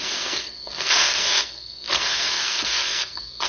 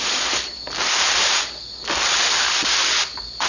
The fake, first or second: first